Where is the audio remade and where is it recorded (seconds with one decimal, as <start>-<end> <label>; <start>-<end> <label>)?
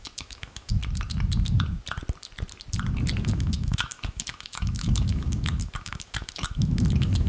0.0-0.8 remade; 0.8-3.2 recorded; 3.2-7.3 remade